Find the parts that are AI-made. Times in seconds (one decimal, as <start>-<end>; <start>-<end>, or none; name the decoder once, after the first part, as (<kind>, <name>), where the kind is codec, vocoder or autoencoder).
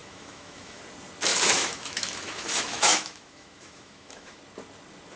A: 0.0-0.8 (autoencoder, DAC-VAE); 1.3-4.4